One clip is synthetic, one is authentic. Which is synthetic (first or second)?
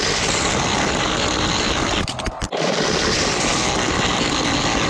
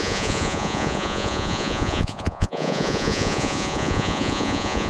second